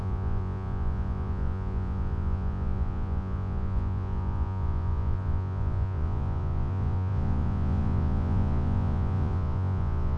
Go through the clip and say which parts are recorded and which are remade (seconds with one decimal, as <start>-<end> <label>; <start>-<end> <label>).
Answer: 0.0-10.2 remade